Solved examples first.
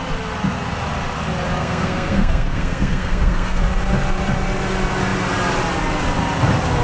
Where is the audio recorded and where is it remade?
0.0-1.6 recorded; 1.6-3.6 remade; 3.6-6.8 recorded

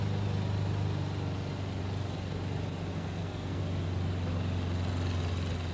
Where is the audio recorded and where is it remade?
0.0-2.9 recorded; 2.9-3.6 remade; 3.6-5.7 recorded

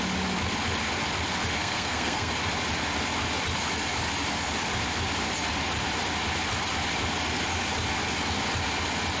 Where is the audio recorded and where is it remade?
0.0-1.6 recorded; 1.6-2.3 remade; 2.3-9.2 recorded

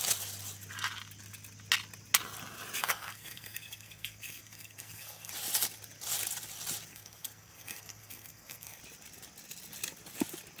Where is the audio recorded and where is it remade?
0.0-2.8 recorded; 2.8-5.3 remade; 5.3-6.9 recorded; 6.9-8.8 remade; 8.8-10.6 recorded

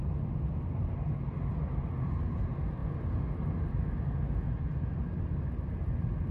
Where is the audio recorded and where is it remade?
0.0-6.3 recorded

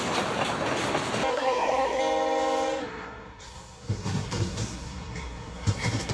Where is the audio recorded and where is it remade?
0.0-1.3 recorded; 1.3-2.0 remade; 2.0-2.8 recorded; 2.8-6.1 remade

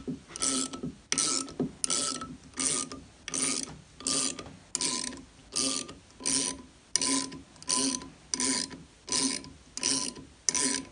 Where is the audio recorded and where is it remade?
0.0-10.9 recorded

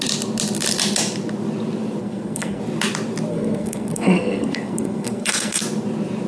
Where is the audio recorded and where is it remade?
0.0-2.0 recorded; 2.0-2.6 remade; 2.6-3.3 recorded; 3.3-5.6 remade; 5.6-6.3 recorded